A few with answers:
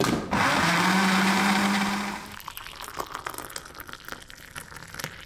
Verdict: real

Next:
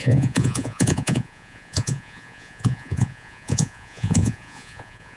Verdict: fake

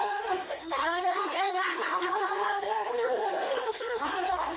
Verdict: fake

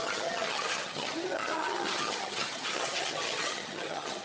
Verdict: fake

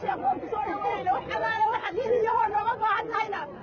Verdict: fake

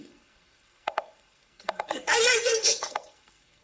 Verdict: fake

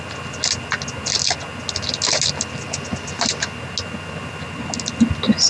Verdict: real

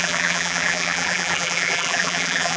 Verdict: fake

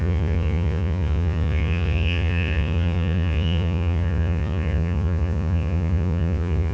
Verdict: fake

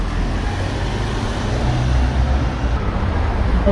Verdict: real